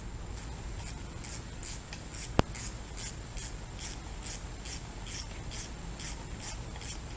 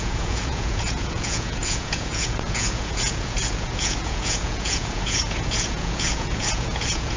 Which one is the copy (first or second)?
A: second